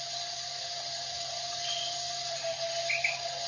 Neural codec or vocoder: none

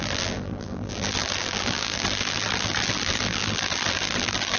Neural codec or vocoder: vocoder, BigVGAN v2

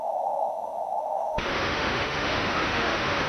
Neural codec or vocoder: autoencoder, DAC-VAE